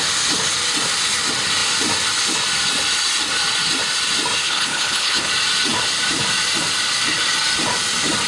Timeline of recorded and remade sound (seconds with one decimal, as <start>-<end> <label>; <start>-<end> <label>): 0.0-4.4 recorded; 4.4-5.3 remade; 5.3-8.3 recorded